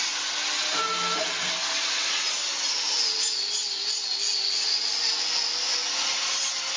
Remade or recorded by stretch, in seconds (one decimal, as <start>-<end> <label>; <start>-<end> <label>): 0.0-6.8 recorded